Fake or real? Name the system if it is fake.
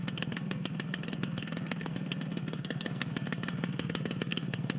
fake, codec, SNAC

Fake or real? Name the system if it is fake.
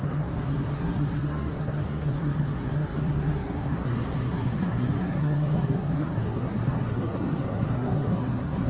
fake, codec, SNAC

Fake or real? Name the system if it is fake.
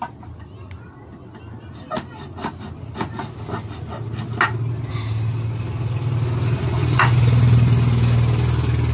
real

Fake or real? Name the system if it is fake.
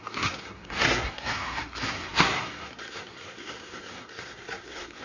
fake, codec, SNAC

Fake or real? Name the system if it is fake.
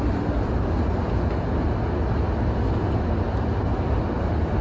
real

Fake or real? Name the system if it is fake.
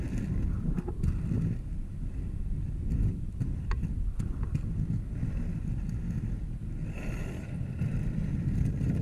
real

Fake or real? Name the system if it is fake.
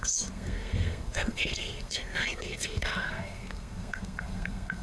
fake, codec, SNAC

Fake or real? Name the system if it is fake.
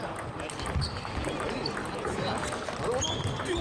real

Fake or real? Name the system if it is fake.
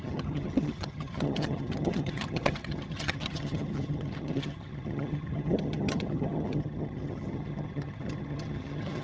fake, vocoder, HiFi-GAN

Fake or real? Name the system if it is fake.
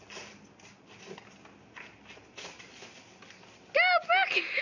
real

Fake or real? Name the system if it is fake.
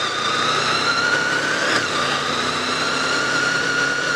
real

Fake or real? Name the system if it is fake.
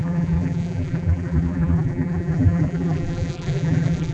fake, vocoder, BigVGAN v2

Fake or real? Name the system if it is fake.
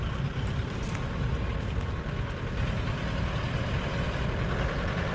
real